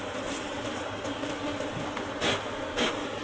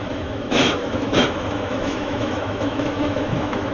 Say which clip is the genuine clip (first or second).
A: first